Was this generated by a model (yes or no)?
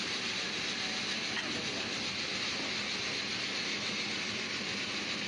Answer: no